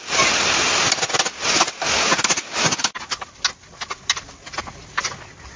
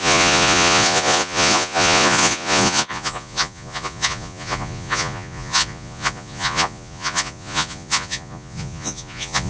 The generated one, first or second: second